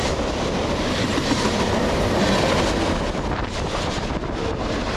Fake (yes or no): no